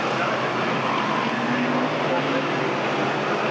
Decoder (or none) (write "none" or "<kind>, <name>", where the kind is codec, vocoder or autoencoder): none